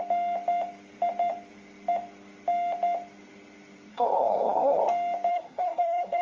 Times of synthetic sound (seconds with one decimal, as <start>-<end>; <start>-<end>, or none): 3.9-4.8; 5.3-6.2